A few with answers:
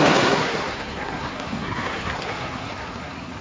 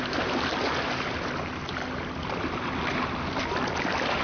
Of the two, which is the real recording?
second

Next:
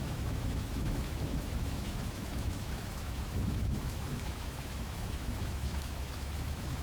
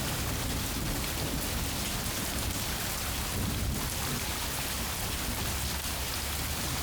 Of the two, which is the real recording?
second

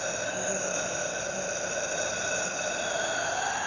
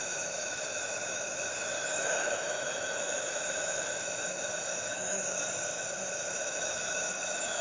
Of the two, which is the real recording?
first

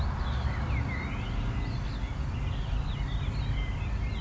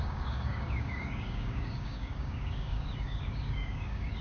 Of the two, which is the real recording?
first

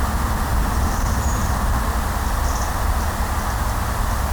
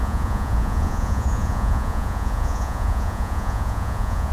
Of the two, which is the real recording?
first